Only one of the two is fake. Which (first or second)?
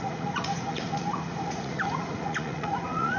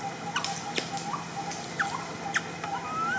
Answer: first